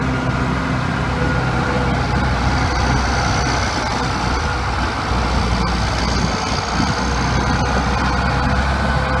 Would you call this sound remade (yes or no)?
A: no